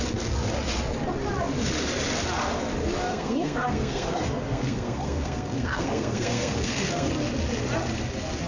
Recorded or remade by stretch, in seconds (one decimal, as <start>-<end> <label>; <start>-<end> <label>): 0.0-3.1 recorded; 3.1-7.1 remade; 7.1-8.5 recorded